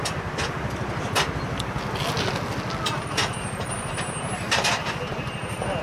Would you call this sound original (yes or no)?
yes